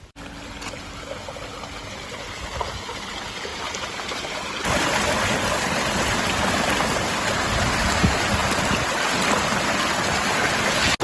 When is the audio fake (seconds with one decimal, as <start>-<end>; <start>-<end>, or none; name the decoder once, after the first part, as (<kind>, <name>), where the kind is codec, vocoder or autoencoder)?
3.5-4.5 (vocoder, BigVGAN v2)